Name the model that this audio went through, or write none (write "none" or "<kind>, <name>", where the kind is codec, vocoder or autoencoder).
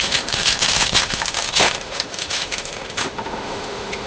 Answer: autoencoder, DAC-VAE